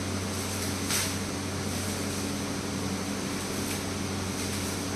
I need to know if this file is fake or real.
real